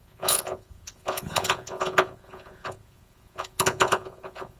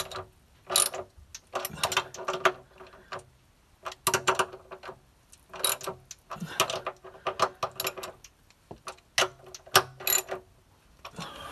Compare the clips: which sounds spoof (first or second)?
first